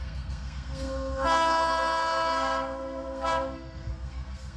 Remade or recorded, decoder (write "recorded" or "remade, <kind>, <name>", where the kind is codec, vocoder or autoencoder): remade, codec, SNAC